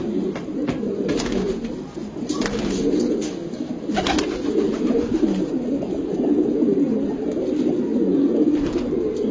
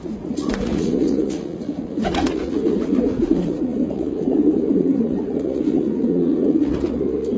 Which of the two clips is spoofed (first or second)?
second